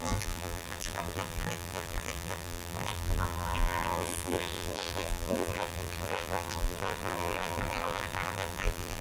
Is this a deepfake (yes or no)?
yes